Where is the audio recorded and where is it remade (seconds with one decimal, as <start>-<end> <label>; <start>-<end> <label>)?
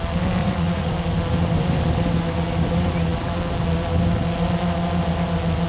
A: 0.0-0.4 recorded; 0.4-0.9 remade; 0.9-5.7 recorded